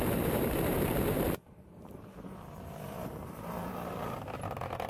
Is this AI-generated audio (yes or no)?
yes